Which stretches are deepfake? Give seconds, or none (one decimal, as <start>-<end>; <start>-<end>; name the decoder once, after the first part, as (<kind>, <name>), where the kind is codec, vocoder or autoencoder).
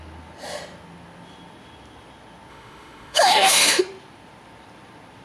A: 2.5-3.8 (autoencoder, DAC-VAE)